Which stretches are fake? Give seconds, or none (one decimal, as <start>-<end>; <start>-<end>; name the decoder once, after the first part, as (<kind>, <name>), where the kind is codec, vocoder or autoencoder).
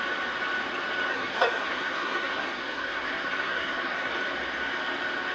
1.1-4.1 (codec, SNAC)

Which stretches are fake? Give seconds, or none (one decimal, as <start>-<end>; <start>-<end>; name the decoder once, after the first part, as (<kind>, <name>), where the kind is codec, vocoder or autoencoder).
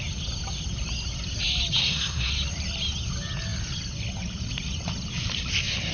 1.8-2.3 (codec, SNAC)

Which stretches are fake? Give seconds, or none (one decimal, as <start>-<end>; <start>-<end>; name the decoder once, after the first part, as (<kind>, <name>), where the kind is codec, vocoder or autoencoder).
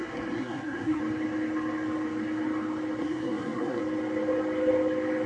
0.0-1.0 (codec, SNAC); 3.0-3.8